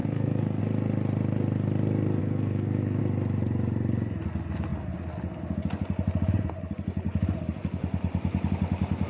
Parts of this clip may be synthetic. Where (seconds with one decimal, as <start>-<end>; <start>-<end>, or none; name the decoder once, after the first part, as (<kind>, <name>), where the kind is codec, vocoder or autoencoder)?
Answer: 0.0-0.6 (codec, SNAC); 2.2-3.0